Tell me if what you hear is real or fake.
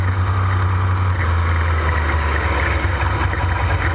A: real